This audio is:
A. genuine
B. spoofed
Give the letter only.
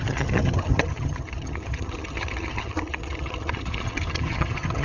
B